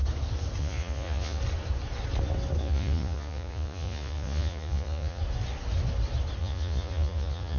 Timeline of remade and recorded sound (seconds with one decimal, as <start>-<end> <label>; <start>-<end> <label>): 0.0-0.6 recorded; 0.6-1.4 remade; 1.4-2.6 recorded; 2.6-5.2 remade; 5.2-6.4 recorded; 6.4-7.6 remade